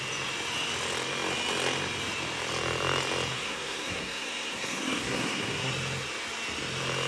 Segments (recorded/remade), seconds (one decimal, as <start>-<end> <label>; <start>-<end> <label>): 0.0-3.3 recorded; 3.3-5.7 remade; 5.7-7.1 recorded

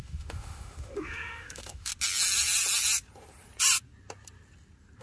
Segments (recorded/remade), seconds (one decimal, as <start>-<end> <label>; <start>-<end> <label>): 0.0-1.9 remade; 1.9-5.0 recorded

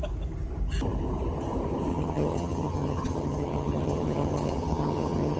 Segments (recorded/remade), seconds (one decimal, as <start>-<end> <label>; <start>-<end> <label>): 0.0-1.9 recorded; 1.9-5.4 remade

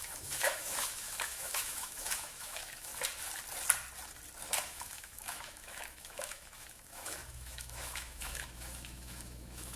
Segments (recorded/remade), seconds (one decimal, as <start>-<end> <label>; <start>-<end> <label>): 0.0-2.9 remade; 2.9-4.6 recorded; 4.6-9.8 remade

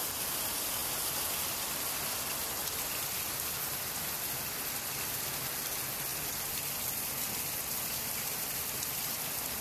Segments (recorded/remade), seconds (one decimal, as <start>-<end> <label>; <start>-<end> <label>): 0.0-9.6 recorded

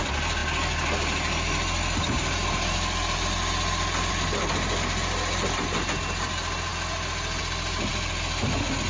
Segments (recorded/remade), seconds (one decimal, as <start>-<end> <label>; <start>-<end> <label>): 0.0-8.9 recorded

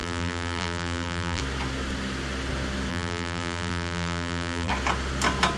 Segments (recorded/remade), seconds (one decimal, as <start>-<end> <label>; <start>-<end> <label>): 0.0-1.4 remade; 1.4-2.9 recorded; 2.9-4.7 remade; 4.7-5.6 recorded